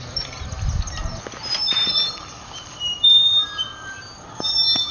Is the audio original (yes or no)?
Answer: yes